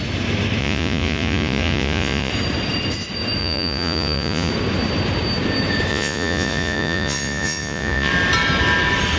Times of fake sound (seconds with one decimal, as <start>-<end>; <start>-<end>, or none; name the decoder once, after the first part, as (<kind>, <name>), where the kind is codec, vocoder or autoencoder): 0.6-2.3 (vocoder, Vocos); 3.4-4.5; 5.9-8.1